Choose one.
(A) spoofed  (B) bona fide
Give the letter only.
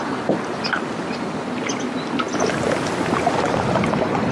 B